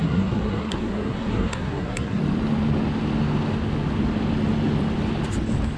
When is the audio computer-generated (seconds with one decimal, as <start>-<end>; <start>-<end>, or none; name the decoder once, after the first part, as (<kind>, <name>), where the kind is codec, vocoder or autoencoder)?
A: 0.0-2.2 (codec, SNAC)